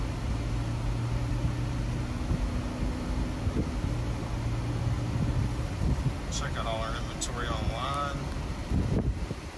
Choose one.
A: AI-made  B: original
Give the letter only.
B